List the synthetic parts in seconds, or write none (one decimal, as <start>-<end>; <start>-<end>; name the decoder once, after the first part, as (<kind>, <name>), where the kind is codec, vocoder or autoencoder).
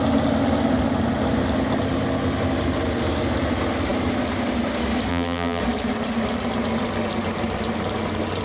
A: 5.1-5.6 (vocoder, BigVGAN v2)